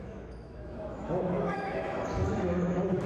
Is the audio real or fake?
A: fake